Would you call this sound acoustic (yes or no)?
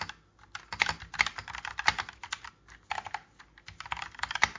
yes